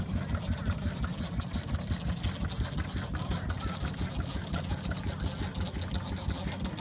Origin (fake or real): real